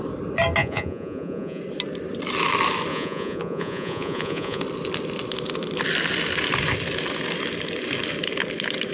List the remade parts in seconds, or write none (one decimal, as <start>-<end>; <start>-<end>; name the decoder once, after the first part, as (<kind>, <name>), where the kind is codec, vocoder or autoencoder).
0.6-1.6 (vocoder, Vocos); 2.9-4.6